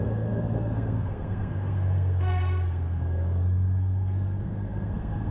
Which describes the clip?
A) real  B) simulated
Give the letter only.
B